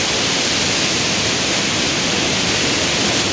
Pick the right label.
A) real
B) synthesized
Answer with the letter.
A